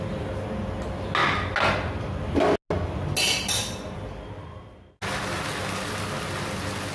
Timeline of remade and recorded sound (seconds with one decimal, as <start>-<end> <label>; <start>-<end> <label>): 0.0-6.9 recorded

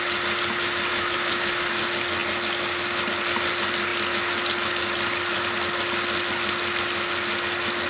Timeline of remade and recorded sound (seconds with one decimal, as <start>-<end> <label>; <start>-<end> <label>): 0.0-0.9 recorded; 0.9-1.7 remade; 1.7-7.9 recorded

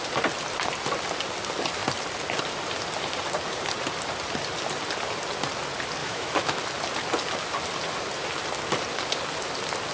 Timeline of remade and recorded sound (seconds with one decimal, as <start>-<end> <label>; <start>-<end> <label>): 0.0-6.0 recorded; 6.0-6.6 remade; 6.6-9.9 recorded

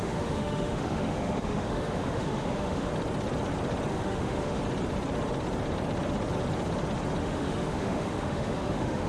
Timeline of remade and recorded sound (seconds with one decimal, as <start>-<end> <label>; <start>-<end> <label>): 0.0-2.9 remade; 2.9-3.9 recorded; 3.9-4.6 remade; 4.6-7.2 recorded; 7.2-9.1 remade